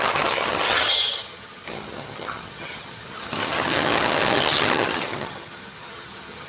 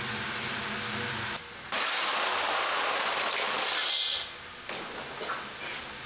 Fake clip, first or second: first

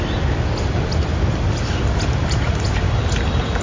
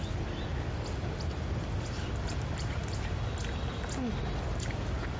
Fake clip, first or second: first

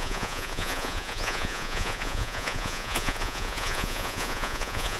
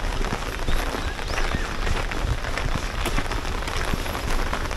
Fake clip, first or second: first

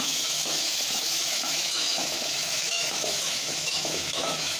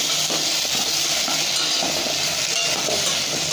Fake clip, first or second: first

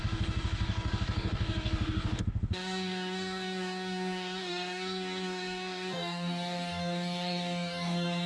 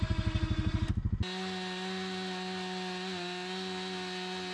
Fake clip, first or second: first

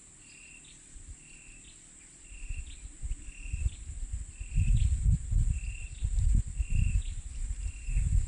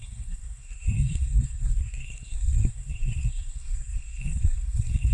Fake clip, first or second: second